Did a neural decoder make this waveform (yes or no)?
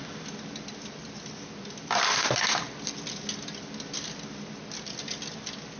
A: no